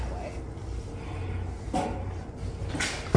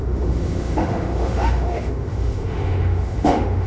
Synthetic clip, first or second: second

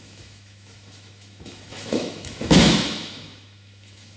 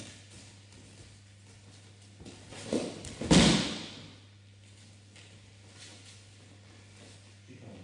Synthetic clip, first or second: first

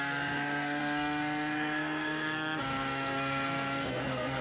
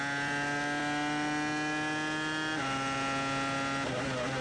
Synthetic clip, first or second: first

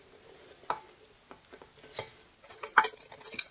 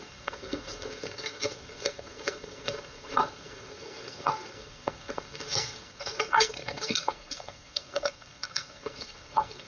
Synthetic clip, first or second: second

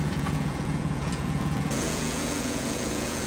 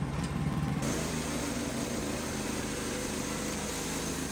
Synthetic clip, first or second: first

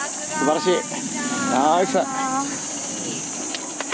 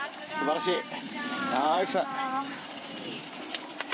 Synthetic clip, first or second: second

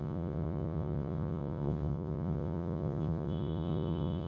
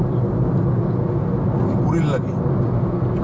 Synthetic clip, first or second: first